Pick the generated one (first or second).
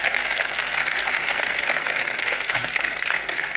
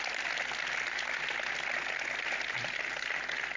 first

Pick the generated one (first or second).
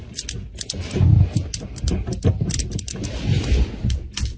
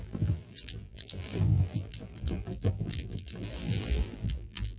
second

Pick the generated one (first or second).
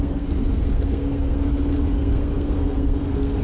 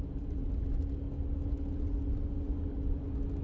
first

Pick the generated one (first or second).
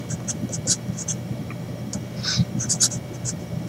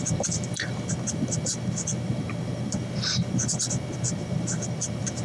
second